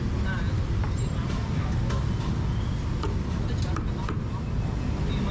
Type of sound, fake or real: real